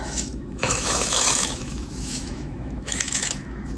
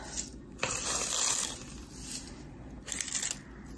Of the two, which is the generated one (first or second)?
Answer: first